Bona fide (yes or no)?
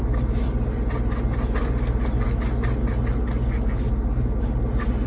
yes